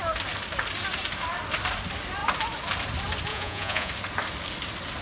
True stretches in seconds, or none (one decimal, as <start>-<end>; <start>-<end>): 0.0-3.3; 3.9-5.0